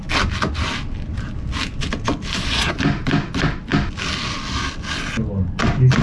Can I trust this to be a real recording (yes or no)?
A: yes